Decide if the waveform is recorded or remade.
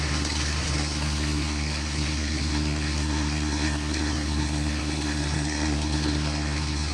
remade